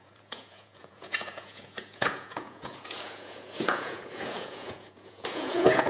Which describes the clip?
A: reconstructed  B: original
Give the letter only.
A